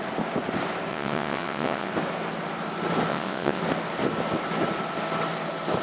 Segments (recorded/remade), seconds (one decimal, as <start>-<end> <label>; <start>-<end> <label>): 0.0-0.9 recorded; 0.9-1.9 remade; 1.9-3.1 recorded; 3.1-3.6 remade; 3.6-5.8 recorded